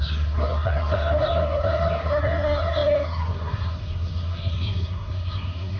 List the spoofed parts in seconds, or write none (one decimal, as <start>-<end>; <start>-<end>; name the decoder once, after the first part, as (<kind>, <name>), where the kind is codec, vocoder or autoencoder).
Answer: 0.0-5.8 (codec, SNAC)